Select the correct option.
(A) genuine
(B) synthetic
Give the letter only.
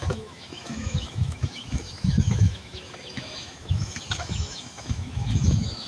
B